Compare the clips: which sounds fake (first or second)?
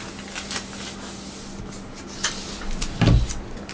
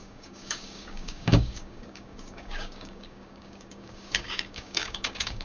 second